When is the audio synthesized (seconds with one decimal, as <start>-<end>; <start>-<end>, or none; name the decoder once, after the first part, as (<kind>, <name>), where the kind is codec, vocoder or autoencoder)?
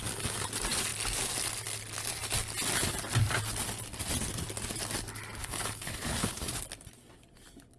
5.4-6.5 (codec, HILCodec)